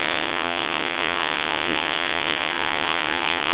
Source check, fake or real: fake